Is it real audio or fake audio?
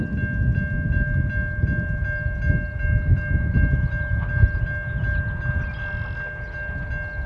real